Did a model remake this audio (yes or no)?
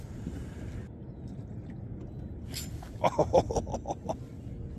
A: no